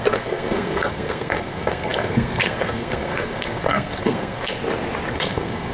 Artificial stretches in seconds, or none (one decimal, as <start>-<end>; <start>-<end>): 0.0-4.6; 5.1-5.7